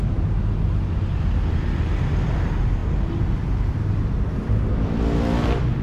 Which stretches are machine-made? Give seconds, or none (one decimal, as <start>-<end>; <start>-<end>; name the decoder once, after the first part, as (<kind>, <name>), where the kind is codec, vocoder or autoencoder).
none